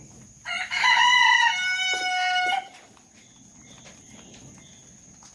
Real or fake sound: real